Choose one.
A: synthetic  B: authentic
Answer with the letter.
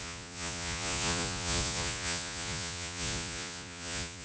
A